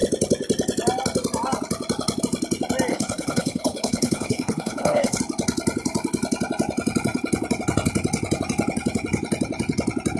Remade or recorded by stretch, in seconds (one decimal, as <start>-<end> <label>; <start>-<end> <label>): 0.0-2.9 recorded; 2.9-5.2 remade; 5.2-10.2 recorded

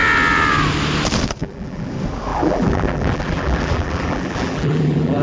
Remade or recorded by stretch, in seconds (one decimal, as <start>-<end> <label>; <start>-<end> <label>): 0.0-1.4 recorded; 1.4-1.9 remade; 1.9-2.3 recorded; 2.3-5.2 remade

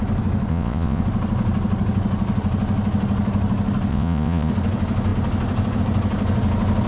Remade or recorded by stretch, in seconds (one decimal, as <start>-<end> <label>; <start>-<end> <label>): 0.0-0.5 recorded; 0.5-1.0 remade; 1.0-3.9 recorded; 3.9-4.5 remade; 4.5-6.9 recorded

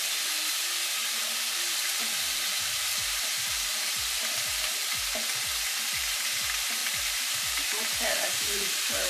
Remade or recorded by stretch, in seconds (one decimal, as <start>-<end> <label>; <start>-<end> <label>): 0.0-1.0 recorded; 1.0-6.2 remade; 6.2-6.8 recorded; 6.8-9.1 remade